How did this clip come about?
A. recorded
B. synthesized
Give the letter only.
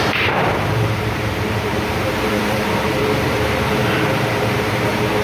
B